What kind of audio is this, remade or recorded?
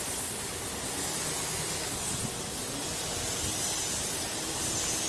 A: recorded